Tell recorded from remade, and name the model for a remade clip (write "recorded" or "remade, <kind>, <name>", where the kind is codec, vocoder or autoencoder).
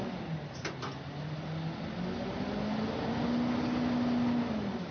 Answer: recorded